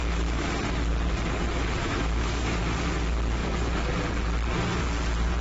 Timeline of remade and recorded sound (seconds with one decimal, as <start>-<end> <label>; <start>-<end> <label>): 0.0-1.8 recorded; 1.8-2.6 remade; 2.6-5.4 recorded